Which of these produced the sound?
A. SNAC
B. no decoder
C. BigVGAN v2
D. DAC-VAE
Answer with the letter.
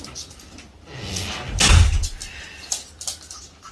B